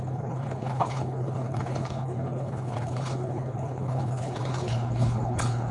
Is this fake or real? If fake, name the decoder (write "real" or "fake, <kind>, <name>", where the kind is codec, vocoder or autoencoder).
fake, codec, HILCodec